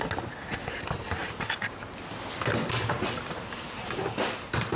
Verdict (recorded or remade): recorded